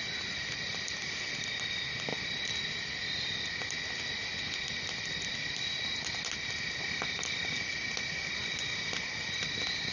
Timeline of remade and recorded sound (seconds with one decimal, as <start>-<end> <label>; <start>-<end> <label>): 0.0-9.9 recorded